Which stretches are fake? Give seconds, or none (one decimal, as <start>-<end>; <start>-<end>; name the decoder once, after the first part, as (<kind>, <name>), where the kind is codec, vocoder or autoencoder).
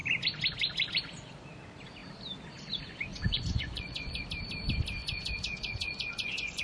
3.1-4.2 (vocoder, Vocos); 5.0-6.6